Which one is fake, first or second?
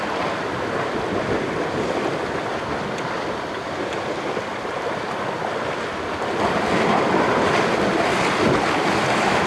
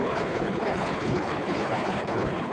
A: second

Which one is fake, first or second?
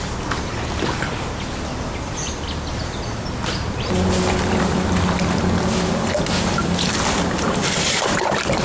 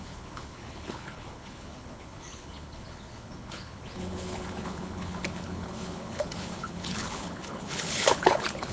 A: second